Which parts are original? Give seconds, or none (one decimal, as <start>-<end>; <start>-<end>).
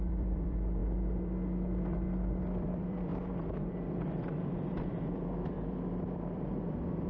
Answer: 0.8-2.4; 3.1-3.7